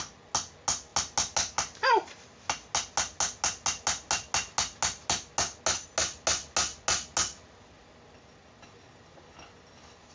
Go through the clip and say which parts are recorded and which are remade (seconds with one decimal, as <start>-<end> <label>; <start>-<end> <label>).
0.0-10.1 recorded